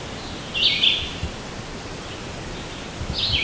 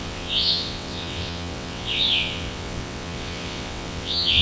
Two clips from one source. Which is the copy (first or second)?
second